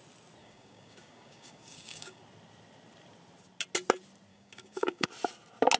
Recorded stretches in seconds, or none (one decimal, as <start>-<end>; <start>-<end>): 0.0-0.4; 2.2-4.3; 5.1-5.8